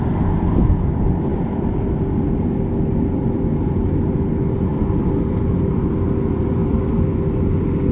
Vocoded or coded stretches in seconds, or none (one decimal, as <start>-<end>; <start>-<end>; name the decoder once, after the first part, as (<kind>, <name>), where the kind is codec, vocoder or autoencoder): none